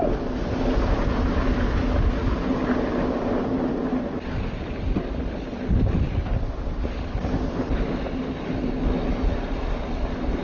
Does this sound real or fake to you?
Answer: real